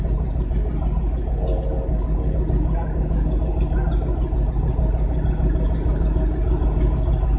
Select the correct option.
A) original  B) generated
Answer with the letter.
A